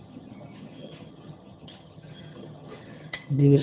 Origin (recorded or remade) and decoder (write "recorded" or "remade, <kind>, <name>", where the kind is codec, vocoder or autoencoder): remade, vocoder, HiFi-GAN